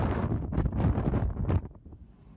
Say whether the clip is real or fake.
real